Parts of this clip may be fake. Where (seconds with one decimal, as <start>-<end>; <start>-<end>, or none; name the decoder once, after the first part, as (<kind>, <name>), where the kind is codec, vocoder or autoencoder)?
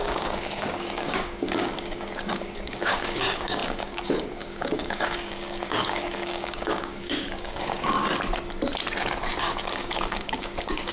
0.0-8.0 (codec, DAC); 9.4-10.9